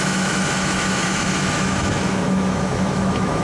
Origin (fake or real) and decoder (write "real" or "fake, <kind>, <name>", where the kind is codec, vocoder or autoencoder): fake, autoencoder, DAC-VAE